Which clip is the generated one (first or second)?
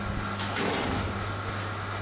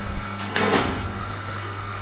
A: second